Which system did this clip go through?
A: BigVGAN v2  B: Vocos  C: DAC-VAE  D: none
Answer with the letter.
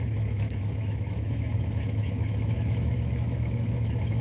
C